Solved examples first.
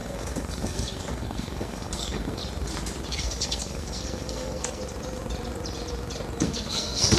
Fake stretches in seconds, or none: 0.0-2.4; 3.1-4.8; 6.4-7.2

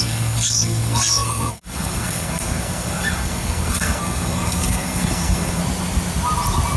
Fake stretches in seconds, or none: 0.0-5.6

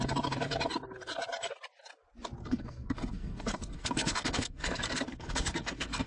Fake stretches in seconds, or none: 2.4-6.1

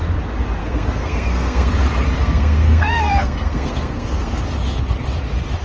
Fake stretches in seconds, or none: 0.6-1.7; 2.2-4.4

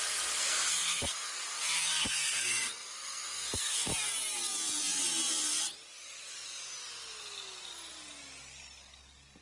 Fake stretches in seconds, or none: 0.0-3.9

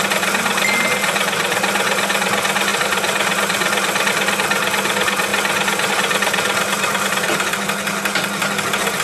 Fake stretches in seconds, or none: none